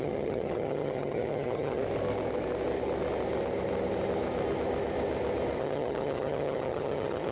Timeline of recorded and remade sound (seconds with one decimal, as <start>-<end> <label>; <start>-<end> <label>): 0.0-1.8 remade; 1.8-5.6 recorded; 5.6-7.3 remade